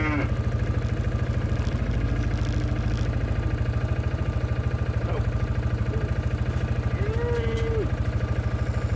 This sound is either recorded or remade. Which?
recorded